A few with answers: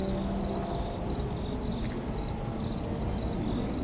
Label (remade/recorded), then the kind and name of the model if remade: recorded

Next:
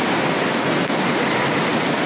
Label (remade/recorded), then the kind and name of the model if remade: recorded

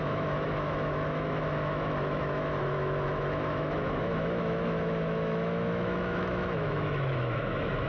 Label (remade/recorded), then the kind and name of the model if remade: remade, autoencoder, DAC-VAE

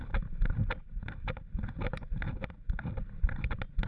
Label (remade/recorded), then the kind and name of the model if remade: recorded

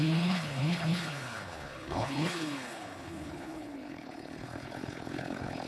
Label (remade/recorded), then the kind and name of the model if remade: remade, codec, HILCodec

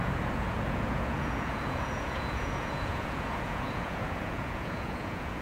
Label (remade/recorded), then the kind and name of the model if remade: remade, vocoder, Vocos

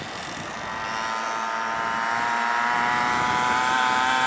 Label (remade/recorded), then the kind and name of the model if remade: recorded